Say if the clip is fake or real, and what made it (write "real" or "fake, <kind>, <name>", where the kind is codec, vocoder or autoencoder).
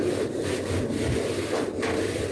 real